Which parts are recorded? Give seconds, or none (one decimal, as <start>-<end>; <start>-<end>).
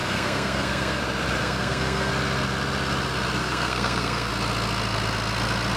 1.0-1.4; 2.1-3.4; 4.3-5.8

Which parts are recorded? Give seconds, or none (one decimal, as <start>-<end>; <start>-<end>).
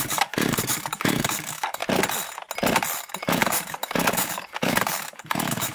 1.8-3.0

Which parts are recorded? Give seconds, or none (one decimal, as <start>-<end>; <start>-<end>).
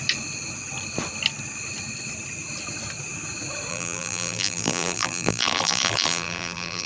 0.0-3.7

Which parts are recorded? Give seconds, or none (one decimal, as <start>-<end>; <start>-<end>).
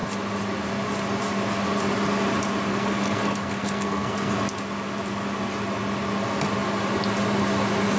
0.0-2.7; 4.3-8.0